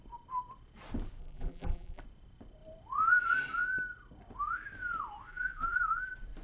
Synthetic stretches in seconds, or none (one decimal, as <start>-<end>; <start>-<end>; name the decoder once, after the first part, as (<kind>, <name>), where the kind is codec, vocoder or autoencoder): 1.2-2.0 (vocoder, BigVGAN v2); 5.3-6.0